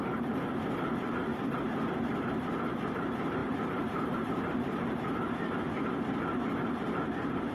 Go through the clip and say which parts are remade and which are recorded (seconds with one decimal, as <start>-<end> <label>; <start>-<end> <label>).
0.0-1.3 remade; 1.3-2.0 recorded; 2.0-7.5 remade